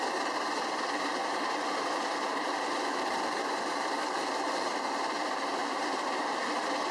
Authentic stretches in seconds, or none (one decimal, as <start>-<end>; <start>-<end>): 0.0-3.7; 4.2-5.6